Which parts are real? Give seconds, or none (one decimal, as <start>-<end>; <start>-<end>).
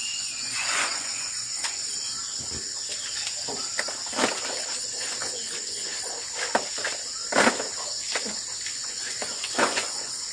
1.8-4.8; 5.9-8.7